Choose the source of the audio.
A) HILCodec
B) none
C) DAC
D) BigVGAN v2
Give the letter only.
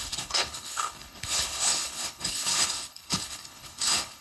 A